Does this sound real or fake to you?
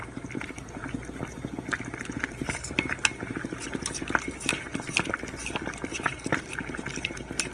fake